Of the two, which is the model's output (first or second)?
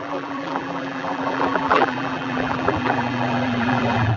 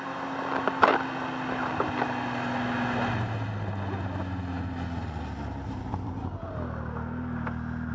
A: first